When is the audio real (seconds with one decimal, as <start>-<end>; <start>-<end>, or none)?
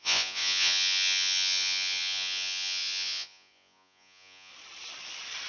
4.5-5.5